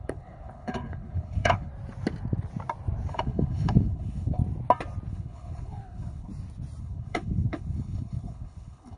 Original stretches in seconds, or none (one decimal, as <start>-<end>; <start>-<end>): 1.7-3.1; 4.4-5.1; 6.3-6.8